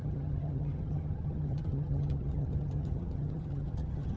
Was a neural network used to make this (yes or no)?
yes